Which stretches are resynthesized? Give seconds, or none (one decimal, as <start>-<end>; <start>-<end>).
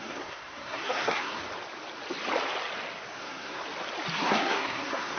0.0-1.4; 3.2-3.6; 4.1-5.2